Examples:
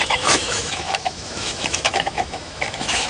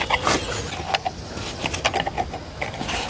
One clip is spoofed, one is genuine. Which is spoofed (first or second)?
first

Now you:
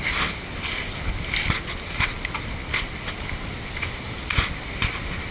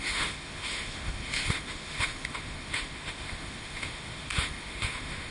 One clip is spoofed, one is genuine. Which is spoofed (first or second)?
second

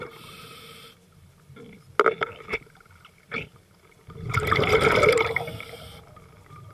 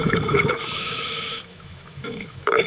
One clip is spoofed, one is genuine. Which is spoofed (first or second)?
second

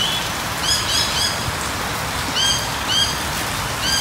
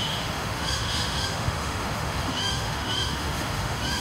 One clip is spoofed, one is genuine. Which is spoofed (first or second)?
second